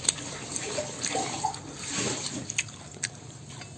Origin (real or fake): real